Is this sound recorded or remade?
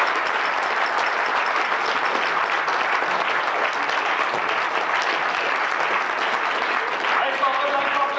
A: recorded